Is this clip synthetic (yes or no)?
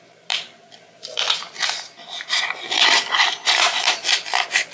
yes